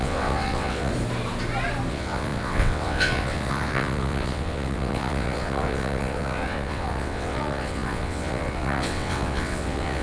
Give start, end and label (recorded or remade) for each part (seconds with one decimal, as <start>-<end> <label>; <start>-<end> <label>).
0.0-0.9 remade; 0.9-1.9 recorded; 1.9-10.0 remade